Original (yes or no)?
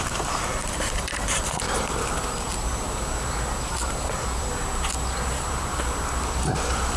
no